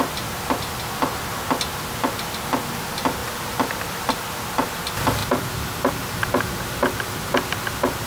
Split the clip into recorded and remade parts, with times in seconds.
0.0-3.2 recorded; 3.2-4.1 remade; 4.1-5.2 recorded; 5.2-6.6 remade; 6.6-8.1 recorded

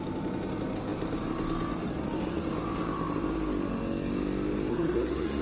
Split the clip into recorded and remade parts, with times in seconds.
0.0-4.7 recorded; 4.7-5.4 remade

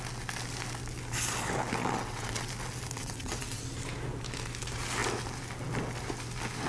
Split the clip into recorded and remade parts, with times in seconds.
0.0-1.8 recorded; 1.8-2.5 remade; 2.5-3.0 recorded; 3.0-3.6 remade; 3.6-6.7 recorded

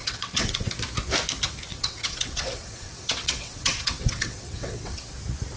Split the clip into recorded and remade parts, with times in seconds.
0.0-0.7 remade; 0.7-1.7 recorded; 1.7-5.1 remade; 5.1-5.6 recorded

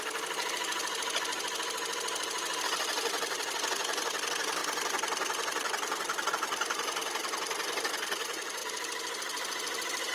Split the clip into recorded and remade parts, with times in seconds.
0.0-4.6 remade; 4.6-6.3 recorded; 6.3-7.0 remade; 7.0-7.8 recorded; 7.8-10.1 remade

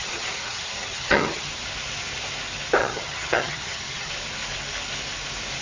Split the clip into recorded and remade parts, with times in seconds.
0.0-1.5 remade; 1.5-2.8 recorded; 2.8-4.1 remade; 4.1-5.6 recorded

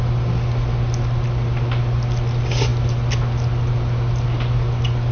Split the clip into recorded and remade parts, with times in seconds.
0.0-5.1 recorded